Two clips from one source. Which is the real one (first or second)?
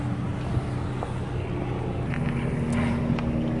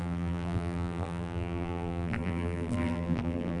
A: first